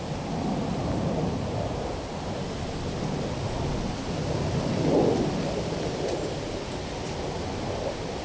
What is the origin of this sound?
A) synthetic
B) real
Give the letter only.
B